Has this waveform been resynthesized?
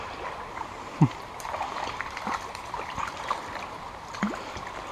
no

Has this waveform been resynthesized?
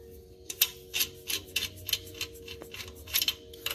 no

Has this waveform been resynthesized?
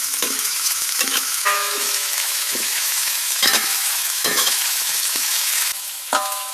yes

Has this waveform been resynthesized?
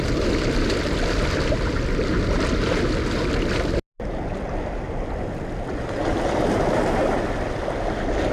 no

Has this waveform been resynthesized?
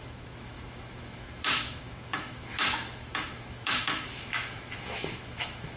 yes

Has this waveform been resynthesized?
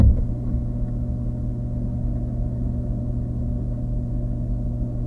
no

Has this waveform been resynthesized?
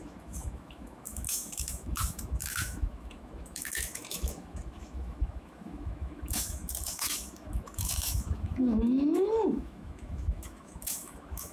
yes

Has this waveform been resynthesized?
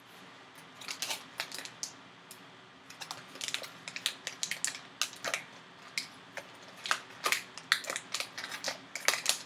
no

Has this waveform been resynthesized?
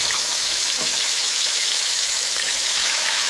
yes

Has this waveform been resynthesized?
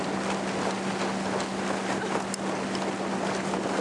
no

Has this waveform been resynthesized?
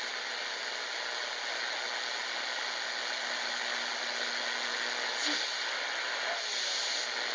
no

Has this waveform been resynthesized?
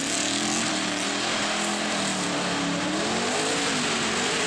no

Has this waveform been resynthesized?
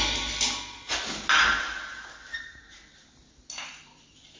no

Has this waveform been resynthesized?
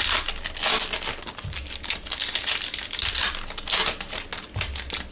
no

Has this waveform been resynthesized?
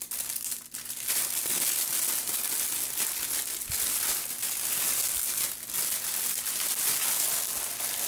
no